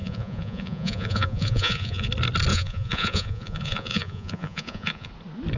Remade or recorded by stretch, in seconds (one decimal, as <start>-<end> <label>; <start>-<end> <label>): 0.0-2.1 remade; 2.1-2.5 recorded; 2.5-5.1 remade; 5.1-5.6 recorded